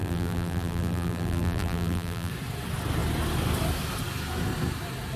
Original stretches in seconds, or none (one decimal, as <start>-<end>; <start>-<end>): 2.3-5.2